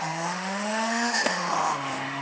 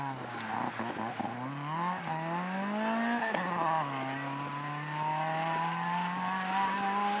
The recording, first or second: second